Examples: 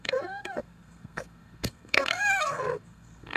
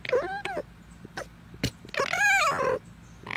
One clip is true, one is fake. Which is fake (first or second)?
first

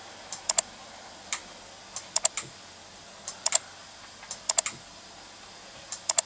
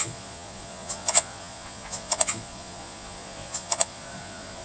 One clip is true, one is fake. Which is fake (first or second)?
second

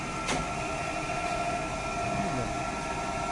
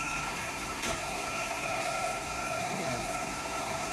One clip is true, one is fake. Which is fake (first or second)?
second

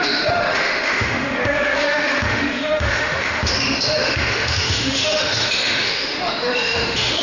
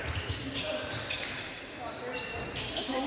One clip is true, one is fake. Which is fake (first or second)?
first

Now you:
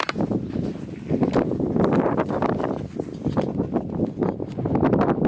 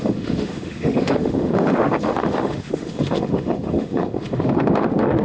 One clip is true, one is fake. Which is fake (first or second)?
second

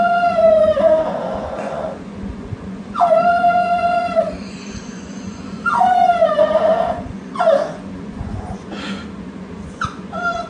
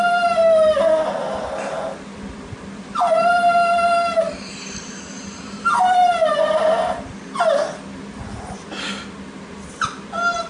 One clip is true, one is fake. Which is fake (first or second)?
first